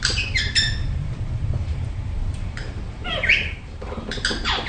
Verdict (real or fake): fake